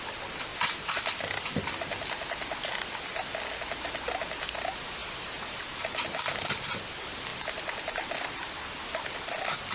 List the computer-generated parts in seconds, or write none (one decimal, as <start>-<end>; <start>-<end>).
none